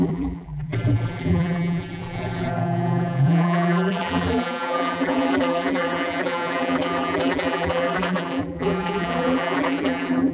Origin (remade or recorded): remade